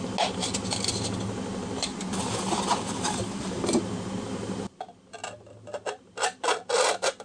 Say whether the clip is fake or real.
real